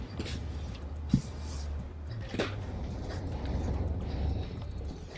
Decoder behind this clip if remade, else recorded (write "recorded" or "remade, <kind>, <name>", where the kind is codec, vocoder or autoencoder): remade, vocoder, BigVGAN v2